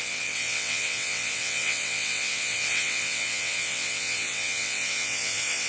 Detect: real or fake fake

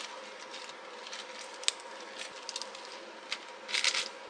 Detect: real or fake real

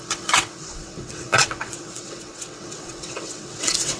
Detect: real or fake fake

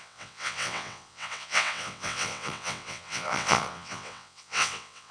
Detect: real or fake fake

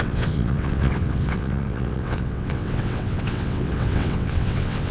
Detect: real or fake fake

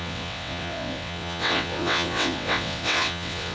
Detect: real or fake fake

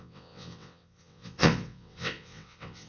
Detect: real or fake fake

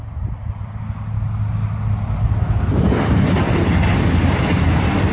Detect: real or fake real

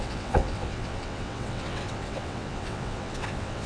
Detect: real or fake fake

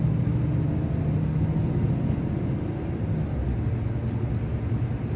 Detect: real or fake real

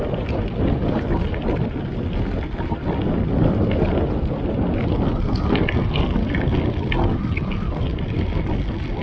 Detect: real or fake real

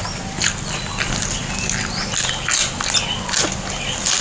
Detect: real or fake real